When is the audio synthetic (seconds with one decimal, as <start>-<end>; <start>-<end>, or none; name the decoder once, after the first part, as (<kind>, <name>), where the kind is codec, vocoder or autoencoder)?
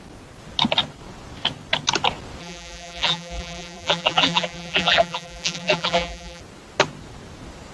2.4-6.4 (vocoder, BigVGAN v2)